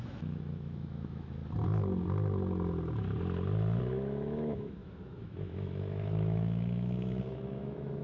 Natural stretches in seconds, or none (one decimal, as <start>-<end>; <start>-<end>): 1.4-3.8